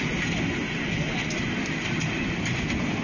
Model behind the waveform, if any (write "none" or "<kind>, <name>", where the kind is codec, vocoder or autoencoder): none